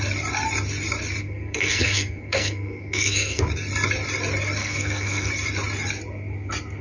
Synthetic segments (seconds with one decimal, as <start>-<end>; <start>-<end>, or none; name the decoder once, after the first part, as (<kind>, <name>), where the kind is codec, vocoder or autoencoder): 1.2-3.4 (codec, SNAC); 4.6-5.3